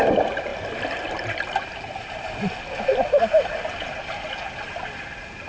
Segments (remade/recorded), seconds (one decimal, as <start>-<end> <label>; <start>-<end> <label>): 0.0-5.5 recorded